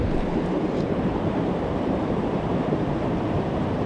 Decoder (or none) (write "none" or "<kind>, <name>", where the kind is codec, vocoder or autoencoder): vocoder, BigVGAN v2